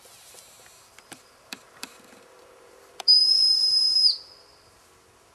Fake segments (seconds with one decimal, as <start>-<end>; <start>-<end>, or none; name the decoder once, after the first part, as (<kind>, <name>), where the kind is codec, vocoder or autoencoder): 0.9-4.1 (vocoder, BigVGAN v2)